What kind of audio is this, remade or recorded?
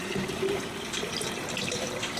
remade